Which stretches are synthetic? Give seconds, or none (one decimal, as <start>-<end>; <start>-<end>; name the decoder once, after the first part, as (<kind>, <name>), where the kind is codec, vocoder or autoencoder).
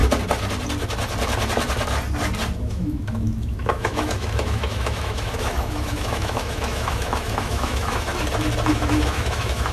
2.6-8.1 (autoencoder, DAC-VAE); 8.7-9.7